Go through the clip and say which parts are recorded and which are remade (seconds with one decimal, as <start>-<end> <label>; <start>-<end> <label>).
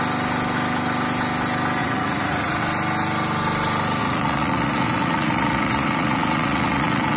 0.0-1.8 recorded; 1.8-2.6 remade; 2.6-4.0 recorded; 4.0-7.2 remade